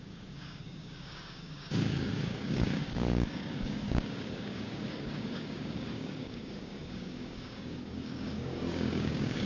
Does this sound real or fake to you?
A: fake